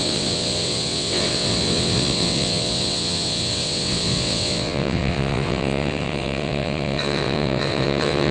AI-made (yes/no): yes